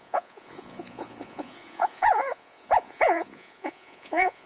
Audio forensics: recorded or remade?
remade